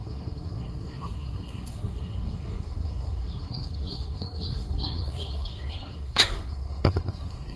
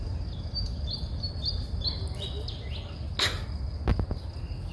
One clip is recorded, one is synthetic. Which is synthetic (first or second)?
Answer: first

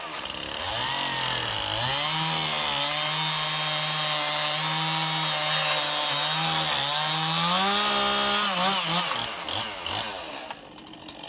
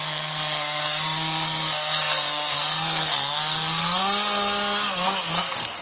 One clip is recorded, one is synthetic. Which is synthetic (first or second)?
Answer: second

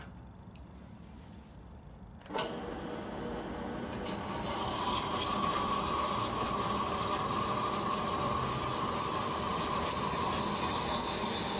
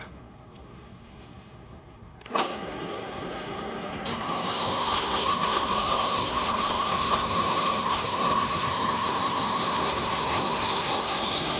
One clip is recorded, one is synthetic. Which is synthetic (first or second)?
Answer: second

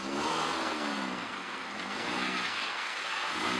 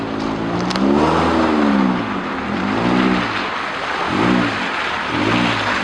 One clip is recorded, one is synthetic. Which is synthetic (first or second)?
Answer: first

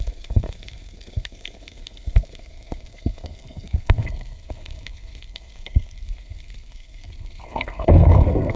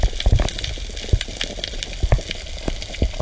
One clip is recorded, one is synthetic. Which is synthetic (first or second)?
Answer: first